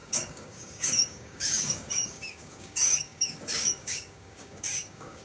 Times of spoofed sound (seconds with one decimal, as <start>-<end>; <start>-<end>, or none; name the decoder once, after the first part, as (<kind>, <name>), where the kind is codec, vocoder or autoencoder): 0.0-5.2 (codec, DAC)